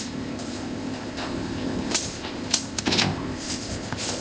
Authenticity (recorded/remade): remade